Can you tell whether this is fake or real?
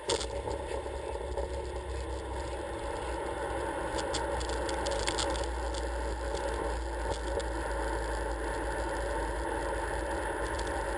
real